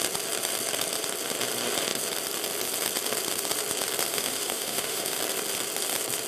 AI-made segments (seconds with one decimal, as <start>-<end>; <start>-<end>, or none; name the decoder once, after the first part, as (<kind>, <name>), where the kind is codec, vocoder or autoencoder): 4.1-5.2 (autoencoder, DAC-VAE)